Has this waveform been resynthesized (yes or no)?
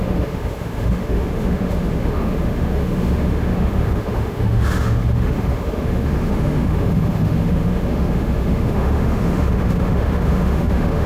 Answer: yes